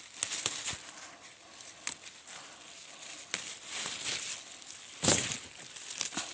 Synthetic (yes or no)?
no